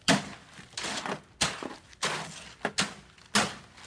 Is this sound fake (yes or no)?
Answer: no